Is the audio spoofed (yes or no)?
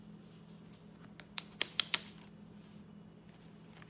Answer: no